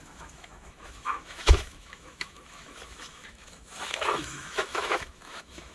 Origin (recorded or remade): remade